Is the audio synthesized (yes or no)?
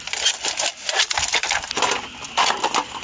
no